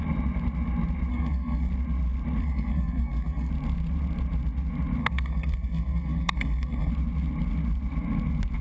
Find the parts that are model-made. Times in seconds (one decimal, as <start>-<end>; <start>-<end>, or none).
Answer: 1.1-1.7; 2.4-3.5; 5.0-6.9